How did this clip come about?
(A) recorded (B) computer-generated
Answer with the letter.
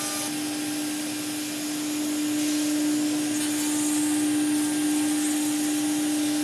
A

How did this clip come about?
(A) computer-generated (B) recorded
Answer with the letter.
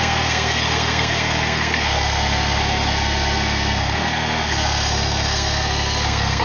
A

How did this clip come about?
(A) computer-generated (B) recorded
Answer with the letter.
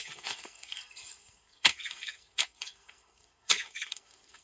A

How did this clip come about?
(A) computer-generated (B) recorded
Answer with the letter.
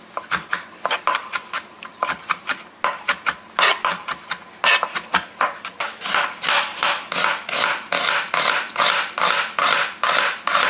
B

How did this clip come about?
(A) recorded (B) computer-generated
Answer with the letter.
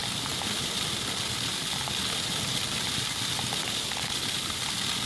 A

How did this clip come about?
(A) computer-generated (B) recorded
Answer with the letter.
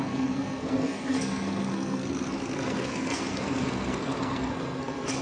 A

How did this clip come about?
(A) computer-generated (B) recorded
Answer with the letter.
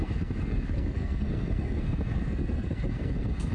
A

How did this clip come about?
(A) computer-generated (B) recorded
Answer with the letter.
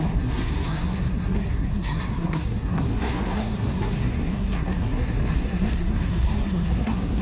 A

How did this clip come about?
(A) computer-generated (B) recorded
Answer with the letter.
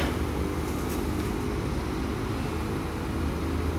B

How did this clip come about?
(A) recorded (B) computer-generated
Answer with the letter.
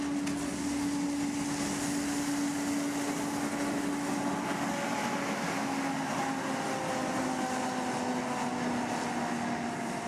A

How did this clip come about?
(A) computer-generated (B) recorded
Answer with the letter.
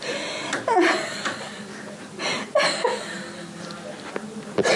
B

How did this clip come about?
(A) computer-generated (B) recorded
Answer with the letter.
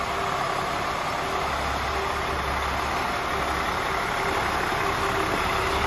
B